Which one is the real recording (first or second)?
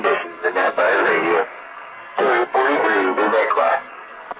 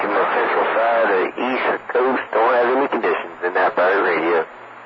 second